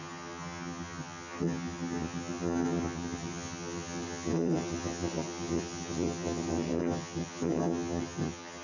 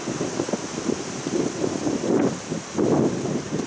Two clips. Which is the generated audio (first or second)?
first